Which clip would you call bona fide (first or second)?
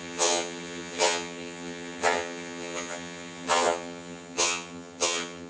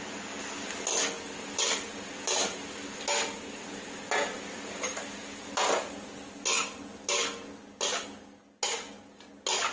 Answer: second